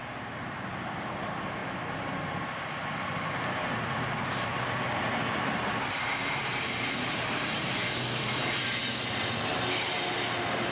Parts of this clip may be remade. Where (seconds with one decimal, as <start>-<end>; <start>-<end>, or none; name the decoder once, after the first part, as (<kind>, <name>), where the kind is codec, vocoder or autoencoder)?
0.0-1.6 (vocoder, BigVGAN v2); 3.5-4.5; 5.4-8.8; 10.1-10.7